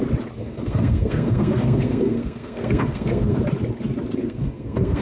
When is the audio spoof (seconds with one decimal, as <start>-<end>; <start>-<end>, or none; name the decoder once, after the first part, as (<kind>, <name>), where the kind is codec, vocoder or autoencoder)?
0.4-3.4 (codec, SNAC); 4.2-5.0

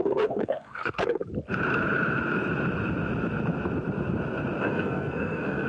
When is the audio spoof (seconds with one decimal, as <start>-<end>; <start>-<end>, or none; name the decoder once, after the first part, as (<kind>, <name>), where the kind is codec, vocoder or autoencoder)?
0.0-1.2 (codec, SNAC); 4.6-5.7

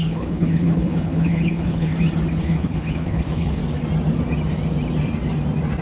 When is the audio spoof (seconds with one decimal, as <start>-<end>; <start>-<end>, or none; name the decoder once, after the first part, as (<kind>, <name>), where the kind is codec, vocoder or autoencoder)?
0.0-1.9 (codec, HILCodec); 2.4-3.6